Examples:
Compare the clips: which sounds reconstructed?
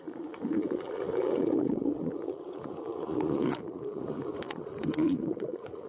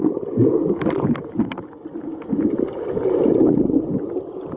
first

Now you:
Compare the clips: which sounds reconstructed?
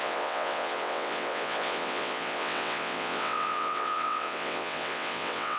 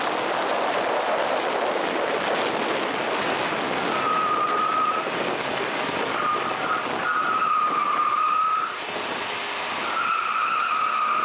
first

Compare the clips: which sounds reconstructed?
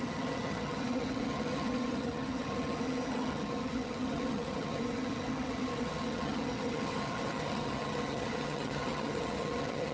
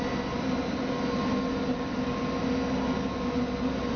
first